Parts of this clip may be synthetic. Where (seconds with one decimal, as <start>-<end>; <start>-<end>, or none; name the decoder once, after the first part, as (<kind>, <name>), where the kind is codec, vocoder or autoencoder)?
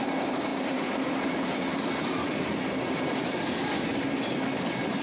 none